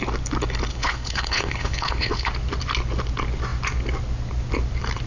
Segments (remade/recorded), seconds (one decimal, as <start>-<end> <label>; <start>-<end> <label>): 0.0-0.7 recorded; 0.7-2.3 remade; 2.3-5.1 recorded